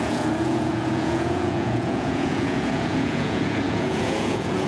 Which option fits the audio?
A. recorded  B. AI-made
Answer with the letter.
B